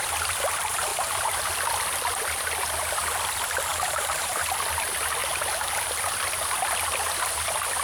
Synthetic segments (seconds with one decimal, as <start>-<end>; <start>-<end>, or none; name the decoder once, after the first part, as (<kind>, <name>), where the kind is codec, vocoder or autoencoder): 0.9-1.5 (vocoder, BigVGAN v2); 3.7-4.4; 5.2-6.1